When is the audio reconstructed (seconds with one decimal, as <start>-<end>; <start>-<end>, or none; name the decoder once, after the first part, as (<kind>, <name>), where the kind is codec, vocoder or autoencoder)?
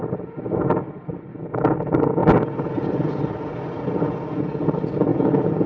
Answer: 2.2-3.6 (vocoder, BigVGAN v2)